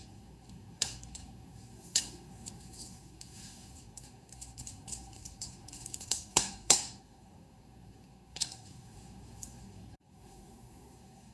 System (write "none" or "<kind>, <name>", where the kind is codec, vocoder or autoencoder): codec, SNAC